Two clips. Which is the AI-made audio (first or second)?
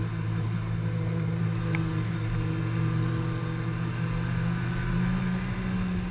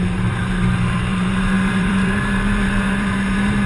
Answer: second